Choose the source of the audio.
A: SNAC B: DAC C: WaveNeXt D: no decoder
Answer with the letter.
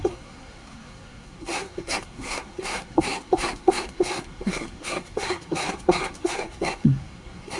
A